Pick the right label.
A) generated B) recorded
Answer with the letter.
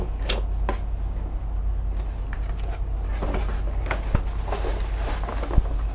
B